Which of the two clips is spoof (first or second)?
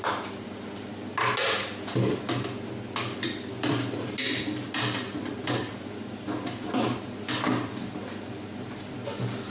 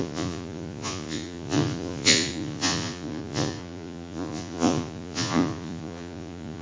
second